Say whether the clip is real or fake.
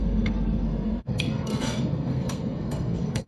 fake